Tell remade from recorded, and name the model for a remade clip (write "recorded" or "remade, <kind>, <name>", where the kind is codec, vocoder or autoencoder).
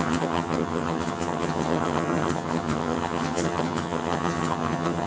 remade, vocoder, HiFi-GAN